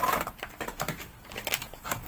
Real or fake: fake